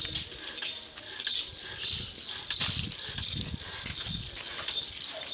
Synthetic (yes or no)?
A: no